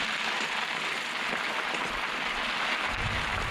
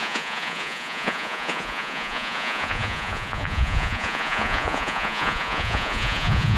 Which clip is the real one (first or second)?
first